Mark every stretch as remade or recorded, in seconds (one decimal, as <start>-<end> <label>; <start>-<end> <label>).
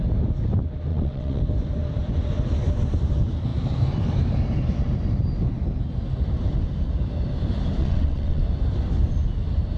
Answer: 0.0-0.9 recorded; 0.9-1.4 remade; 1.4-7.8 recorded; 7.8-8.4 remade; 8.4-9.8 recorded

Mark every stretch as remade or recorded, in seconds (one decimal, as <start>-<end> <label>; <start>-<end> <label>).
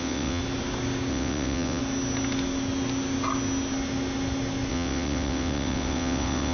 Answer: 0.0-0.4 remade; 0.4-1.1 recorded; 1.1-1.8 remade; 1.8-4.7 recorded; 4.7-6.5 remade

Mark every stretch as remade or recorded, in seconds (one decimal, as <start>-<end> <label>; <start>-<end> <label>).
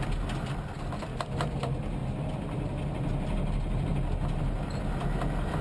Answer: 0.0-5.6 recorded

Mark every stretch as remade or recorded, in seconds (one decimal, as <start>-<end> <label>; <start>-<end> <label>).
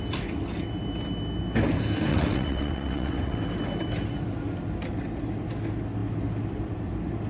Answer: 0.0-2.1 recorded; 2.1-3.4 remade; 3.4-7.3 recorded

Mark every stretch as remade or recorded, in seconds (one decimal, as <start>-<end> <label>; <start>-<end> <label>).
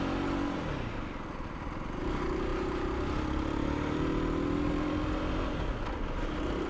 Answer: 0.0-6.7 recorded